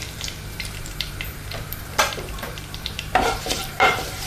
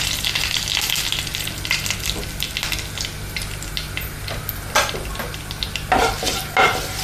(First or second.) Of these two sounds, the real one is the second